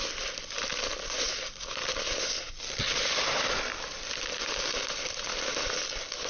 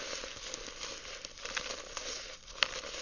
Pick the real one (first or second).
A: second